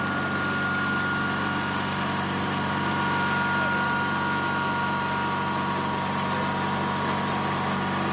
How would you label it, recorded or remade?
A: recorded